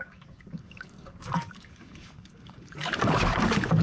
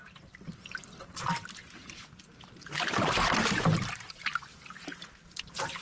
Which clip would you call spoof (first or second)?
first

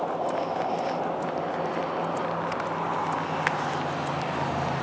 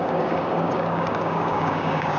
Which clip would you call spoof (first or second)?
second